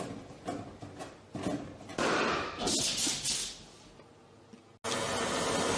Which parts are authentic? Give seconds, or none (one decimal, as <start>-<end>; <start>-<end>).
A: 0.0-5.8